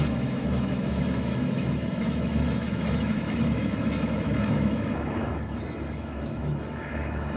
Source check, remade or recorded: remade